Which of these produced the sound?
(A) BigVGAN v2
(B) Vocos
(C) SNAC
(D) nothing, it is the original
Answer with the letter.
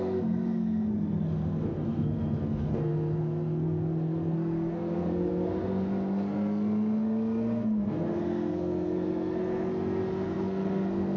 C